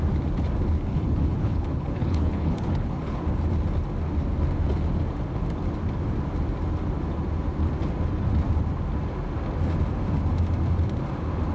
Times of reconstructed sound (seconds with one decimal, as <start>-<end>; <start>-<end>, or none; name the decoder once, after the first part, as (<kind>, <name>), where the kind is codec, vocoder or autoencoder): 0.9-3.2 (codec, HILCodec)